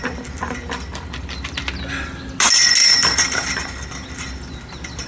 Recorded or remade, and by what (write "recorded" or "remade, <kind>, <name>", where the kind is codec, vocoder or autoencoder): recorded